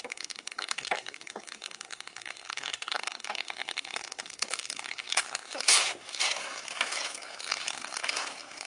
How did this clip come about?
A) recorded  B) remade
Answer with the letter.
B